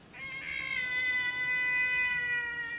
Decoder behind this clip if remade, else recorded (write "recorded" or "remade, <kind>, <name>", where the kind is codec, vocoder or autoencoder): recorded